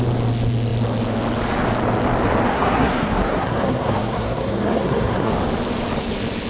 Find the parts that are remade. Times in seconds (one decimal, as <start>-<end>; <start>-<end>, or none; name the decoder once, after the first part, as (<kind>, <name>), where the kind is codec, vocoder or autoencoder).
2.5-5.3 (codec, SNAC)